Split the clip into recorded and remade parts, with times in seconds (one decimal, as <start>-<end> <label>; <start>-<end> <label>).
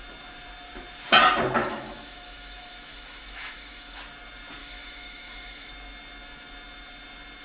0.0-1.6 recorded; 1.6-4.0 remade; 4.0-4.6 recorded; 4.6-5.7 remade; 5.7-7.4 recorded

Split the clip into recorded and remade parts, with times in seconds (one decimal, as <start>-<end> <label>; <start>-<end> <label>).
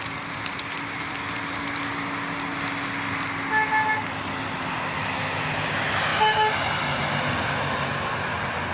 0.0-8.7 recorded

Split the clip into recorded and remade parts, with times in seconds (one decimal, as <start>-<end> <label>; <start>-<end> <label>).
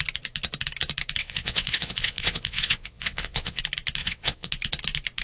0.0-1.2 recorded; 1.2-3.6 remade; 3.6-4.0 recorded; 4.0-4.5 remade; 4.5-5.2 recorded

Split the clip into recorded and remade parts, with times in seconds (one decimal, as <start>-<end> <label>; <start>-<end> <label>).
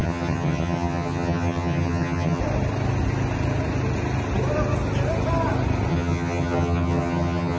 0.0-2.4 remade; 2.4-5.9 recorded; 5.9-7.6 remade